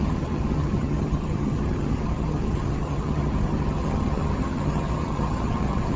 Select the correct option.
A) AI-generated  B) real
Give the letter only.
A